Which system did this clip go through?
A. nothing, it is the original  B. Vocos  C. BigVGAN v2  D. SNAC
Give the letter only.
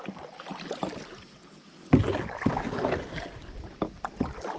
A